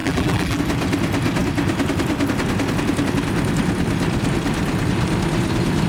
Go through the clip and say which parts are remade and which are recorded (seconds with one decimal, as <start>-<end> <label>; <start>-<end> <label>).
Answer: 0.0-0.6 remade; 0.6-5.9 recorded